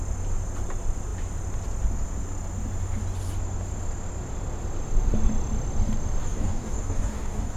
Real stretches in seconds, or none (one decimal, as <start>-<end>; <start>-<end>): 0.0-6.2